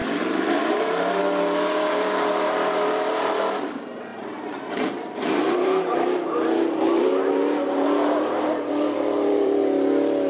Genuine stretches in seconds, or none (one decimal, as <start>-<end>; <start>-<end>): 9.6-10.3